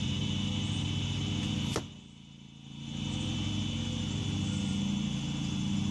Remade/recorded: remade